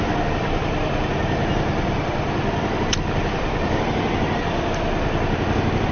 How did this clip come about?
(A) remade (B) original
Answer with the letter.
B